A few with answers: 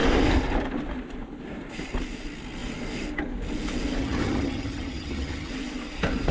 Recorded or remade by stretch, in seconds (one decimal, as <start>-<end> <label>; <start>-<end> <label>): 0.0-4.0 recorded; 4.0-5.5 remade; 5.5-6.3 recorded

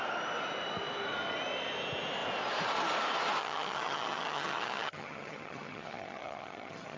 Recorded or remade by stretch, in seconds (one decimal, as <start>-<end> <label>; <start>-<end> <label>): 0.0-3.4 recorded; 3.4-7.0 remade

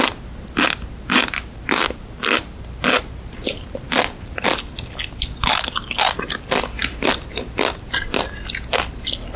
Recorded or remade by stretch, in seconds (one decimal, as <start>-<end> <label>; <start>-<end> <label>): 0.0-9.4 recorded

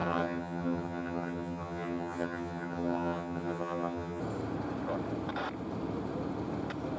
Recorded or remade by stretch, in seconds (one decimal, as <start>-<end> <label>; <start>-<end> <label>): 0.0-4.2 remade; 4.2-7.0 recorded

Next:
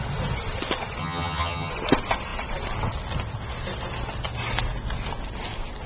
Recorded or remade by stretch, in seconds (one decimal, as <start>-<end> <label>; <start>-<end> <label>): 0.0-1.0 recorded; 1.0-1.7 remade; 1.7-5.9 recorded

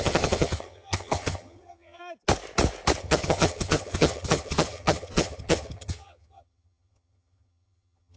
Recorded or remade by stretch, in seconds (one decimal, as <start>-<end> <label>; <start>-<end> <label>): 0.0-2.0 remade; 2.0-3.0 recorded; 3.0-8.2 remade

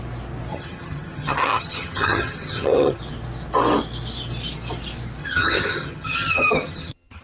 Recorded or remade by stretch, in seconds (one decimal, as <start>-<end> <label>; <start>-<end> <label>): 0.0-0.5 recorded; 0.5-3.0 remade; 3.0-5.2 recorded; 5.2-7.2 remade